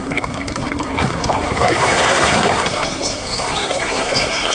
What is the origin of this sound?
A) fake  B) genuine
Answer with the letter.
A